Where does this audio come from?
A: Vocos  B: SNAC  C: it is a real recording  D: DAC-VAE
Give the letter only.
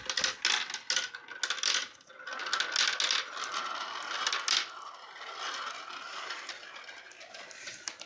C